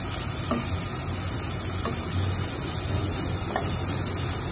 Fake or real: real